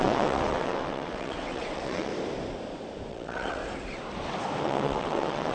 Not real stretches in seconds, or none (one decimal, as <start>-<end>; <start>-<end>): 0.0-2.1; 3.1-3.6; 4.6-5.5